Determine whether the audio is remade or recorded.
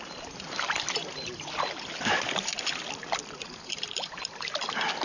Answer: recorded